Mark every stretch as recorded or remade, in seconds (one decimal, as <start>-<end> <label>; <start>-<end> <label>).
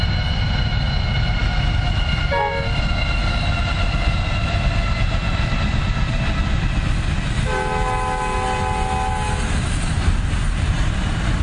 0.0-11.4 recorded